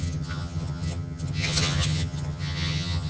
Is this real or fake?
fake